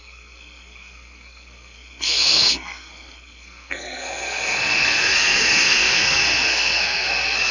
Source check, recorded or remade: remade